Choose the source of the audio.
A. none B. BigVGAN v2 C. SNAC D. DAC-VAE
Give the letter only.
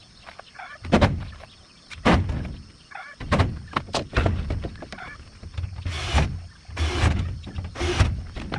A